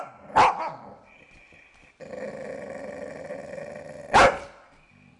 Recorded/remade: recorded